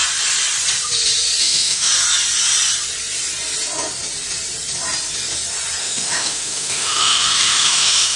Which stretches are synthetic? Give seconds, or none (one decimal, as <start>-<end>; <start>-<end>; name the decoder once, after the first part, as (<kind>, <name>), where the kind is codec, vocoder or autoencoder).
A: 1.4-1.9 (autoencoder, DAC-VAE); 5.8-8.2